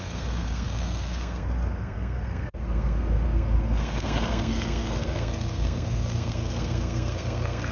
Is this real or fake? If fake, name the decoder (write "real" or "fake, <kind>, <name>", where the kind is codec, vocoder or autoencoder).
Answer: fake, codec, SNAC